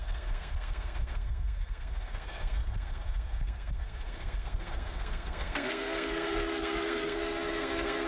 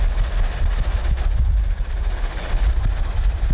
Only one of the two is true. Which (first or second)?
second